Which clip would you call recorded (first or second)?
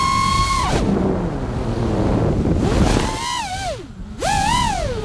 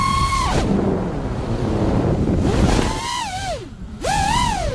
first